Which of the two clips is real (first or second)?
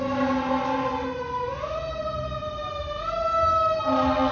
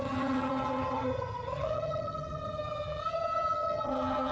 first